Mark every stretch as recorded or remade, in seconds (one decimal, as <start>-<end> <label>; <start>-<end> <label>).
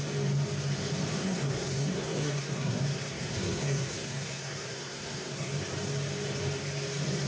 0.0-1.1 recorded; 1.1-5.5 remade; 5.5-7.3 recorded